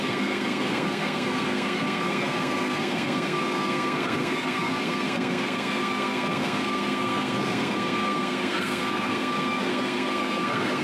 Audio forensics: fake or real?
fake